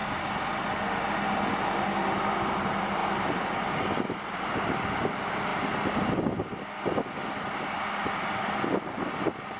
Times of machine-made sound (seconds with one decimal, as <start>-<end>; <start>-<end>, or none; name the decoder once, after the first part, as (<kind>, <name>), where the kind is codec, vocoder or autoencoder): none